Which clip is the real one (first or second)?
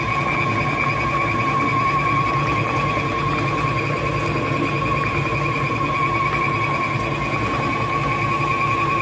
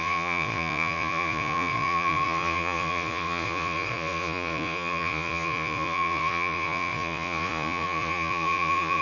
first